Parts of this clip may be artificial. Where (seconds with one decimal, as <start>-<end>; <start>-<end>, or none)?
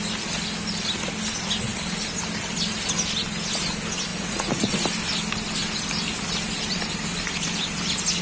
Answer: 4.1-4.7